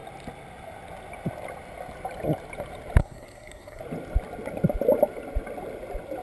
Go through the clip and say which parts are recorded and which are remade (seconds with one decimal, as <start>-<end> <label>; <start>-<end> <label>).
0.0-3.0 recorded; 3.0-3.8 remade; 3.8-6.2 recorded